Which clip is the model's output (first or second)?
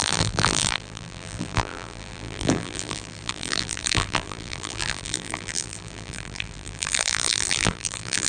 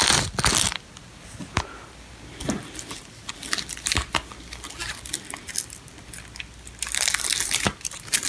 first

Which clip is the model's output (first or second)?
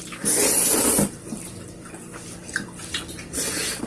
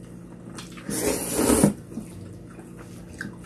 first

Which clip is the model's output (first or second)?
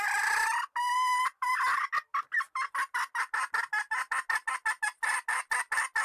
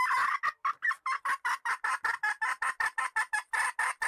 second